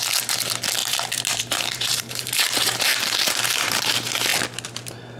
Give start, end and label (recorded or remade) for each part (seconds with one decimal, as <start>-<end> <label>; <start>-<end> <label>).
0.0-0.8 recorded; 0.8-3.8 remade; 3.8-5.2 recorded